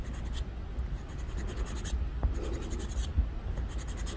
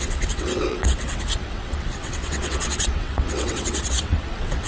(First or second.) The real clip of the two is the first